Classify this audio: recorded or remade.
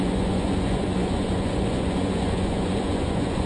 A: remade